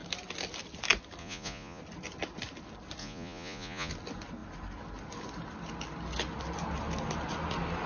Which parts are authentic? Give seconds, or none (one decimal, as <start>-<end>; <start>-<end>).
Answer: 0.0-1.2; 1.8-3.0; 3.9-7.9